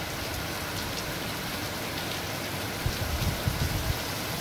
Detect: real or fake real